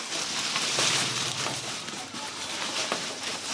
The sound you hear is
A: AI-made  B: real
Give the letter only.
A